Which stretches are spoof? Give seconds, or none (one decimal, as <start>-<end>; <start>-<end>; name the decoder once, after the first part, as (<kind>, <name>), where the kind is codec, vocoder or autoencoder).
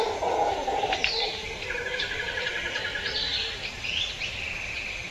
1.0-2.8 (vocoder, BigVGAN v2); 3.3-5.1